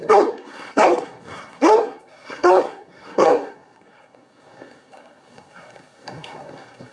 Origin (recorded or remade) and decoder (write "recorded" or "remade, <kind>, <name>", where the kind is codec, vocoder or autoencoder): remade, codec, SNAC